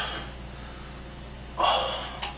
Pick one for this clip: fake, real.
real